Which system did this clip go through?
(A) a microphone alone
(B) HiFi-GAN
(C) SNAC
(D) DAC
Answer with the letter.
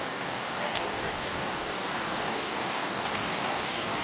D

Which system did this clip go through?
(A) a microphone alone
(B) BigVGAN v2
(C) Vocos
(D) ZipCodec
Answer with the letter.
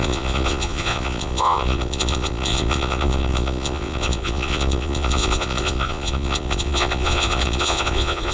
C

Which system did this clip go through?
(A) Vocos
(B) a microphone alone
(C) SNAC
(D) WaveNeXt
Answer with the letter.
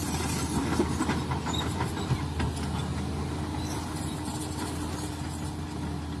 B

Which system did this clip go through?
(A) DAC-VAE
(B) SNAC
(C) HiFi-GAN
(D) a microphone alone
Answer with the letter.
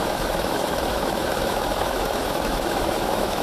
A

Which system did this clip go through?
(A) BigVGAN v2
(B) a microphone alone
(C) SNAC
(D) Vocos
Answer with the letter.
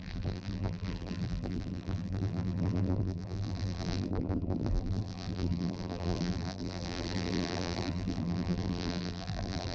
A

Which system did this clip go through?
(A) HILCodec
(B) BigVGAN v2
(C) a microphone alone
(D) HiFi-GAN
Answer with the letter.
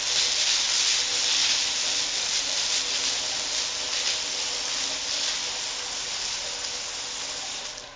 C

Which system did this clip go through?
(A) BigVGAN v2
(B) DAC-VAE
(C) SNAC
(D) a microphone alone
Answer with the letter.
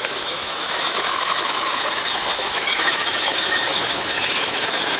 B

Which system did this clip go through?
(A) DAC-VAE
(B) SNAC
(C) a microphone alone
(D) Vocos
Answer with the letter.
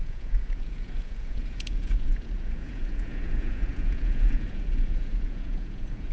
D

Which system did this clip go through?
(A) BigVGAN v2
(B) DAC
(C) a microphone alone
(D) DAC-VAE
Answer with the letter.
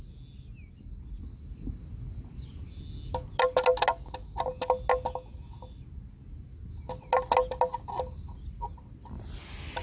C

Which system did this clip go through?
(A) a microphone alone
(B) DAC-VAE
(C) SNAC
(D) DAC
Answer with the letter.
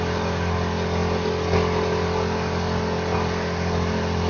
A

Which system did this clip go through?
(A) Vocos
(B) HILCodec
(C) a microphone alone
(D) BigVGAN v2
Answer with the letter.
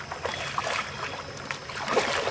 C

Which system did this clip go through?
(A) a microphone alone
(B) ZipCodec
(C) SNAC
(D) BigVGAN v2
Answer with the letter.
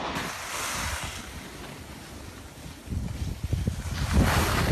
A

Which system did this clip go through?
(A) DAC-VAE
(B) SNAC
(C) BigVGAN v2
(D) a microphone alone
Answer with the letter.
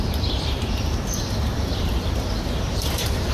C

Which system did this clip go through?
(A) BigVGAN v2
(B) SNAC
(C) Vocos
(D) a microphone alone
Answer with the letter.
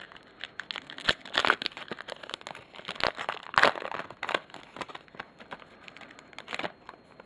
D